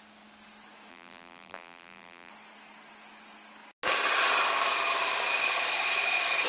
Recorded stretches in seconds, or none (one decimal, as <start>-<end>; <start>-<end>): 0.0-0.9; 2.3-6.5

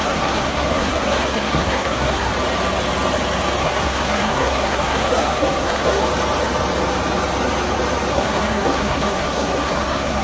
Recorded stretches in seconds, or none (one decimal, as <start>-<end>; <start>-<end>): 2.3-3.6; 6.0-8.1

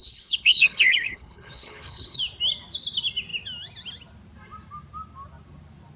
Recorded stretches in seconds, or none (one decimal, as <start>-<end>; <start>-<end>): 2.2-6.0

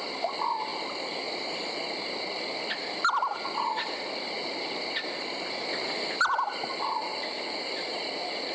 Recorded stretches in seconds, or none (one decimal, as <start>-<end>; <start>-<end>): 0.0-8.5

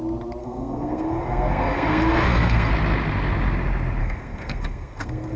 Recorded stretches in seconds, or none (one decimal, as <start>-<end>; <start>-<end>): 0.0-0.4; 2.7-4.0

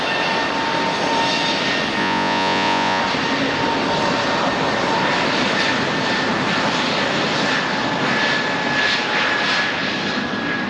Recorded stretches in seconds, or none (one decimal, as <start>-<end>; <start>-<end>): 0.0-2.0; 3.0-10.7

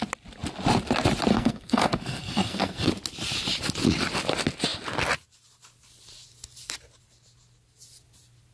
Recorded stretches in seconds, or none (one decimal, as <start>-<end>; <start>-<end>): 0.0-1.3; 2.9-8.5

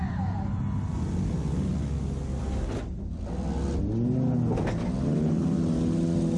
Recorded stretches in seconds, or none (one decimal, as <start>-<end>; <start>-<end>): 0.0-6.4